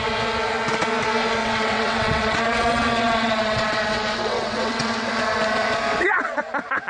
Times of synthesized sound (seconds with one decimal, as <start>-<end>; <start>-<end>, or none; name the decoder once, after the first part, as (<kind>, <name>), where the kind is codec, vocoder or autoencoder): 1.4-5.1 (vocoder, WaveNeXt); 5.9-6.4

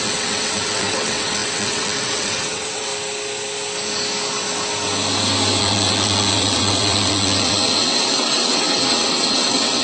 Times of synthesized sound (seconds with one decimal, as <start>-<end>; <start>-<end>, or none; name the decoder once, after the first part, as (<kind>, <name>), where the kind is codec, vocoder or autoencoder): 0.0-2.9 (vocoder, WaveNeXt); 5.6-9.8

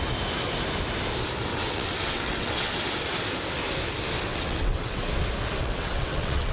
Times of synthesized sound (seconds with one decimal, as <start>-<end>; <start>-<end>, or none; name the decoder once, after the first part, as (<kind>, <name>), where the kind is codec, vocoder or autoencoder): 1.5-2.7 (vocoder, WaveNeXt); 4.3-5.1; 5.6-6.5

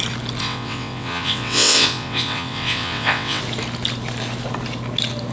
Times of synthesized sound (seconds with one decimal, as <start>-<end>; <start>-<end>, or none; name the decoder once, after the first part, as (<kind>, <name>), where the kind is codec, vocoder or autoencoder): 0.4-3.4 (vocoder, WaveNeXt)

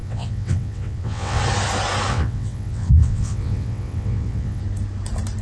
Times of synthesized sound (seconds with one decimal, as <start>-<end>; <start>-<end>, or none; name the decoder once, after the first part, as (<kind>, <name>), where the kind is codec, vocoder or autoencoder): 0.0-1.4 (vocoder, WaveNeXt); 2.1-4.6